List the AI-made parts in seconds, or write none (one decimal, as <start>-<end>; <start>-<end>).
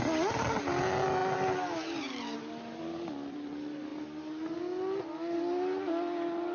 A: none